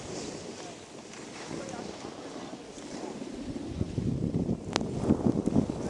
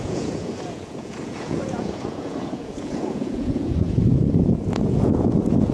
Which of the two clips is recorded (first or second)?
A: first